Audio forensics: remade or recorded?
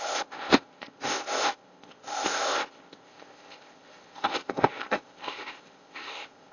remade